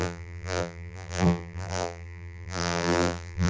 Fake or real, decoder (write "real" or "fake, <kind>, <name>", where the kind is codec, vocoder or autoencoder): fake, vocoder, BigVGAN v2